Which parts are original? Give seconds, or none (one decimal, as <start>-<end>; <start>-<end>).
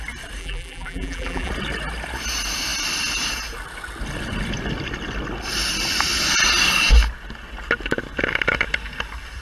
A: 0.0-0.4; 1.5-9.4